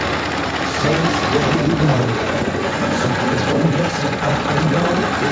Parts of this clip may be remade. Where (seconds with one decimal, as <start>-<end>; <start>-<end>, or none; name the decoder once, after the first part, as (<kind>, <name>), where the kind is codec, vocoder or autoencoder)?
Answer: 1.9-4.4 (vocoder, Vocos)